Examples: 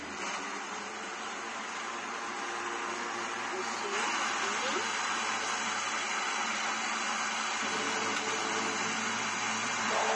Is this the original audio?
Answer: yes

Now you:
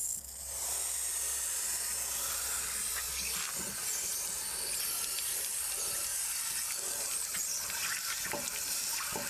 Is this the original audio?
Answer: yes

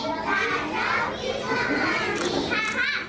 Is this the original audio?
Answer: yes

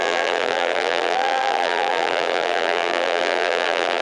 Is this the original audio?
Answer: no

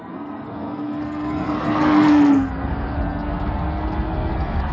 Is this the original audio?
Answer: no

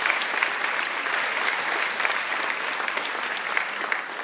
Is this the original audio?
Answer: yes